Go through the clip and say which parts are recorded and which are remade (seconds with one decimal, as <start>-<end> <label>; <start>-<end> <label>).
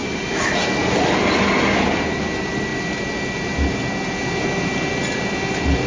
0.0-5.9 recorded